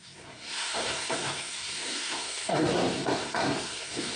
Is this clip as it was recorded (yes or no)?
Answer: no